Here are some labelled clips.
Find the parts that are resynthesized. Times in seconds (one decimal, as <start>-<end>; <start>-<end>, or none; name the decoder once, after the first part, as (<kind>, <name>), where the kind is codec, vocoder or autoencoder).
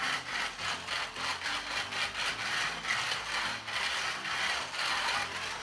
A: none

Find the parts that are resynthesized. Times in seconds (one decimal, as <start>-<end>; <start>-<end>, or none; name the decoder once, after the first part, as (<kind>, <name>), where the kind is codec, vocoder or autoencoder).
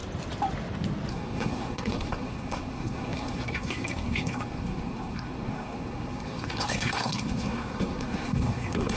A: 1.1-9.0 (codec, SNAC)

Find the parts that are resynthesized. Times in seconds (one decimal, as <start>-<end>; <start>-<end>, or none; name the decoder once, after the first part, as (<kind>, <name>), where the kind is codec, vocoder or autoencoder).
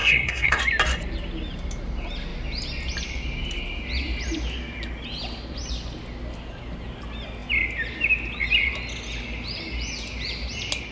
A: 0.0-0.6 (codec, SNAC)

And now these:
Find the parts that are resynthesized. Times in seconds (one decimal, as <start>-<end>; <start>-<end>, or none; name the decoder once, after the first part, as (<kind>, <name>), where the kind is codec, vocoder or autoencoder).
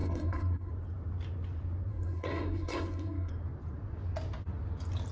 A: 0.0-0.7 (codec, SNAC); 1.9-3.3